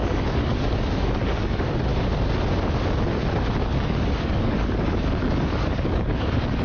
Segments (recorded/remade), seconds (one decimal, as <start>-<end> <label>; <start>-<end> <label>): 0.0-1.9 remade; 1.9-3.6 recorded; 3.6-6.6 remade